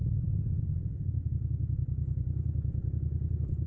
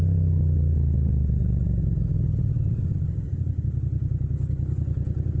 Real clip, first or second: second